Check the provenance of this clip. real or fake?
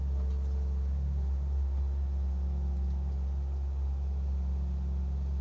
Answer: real